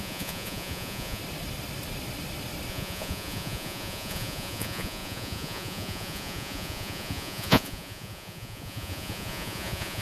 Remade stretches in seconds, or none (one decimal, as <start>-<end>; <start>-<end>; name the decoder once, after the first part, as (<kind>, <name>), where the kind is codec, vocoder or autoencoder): 0.0-1.2 (vocoder, Vocos); 2.7-10.0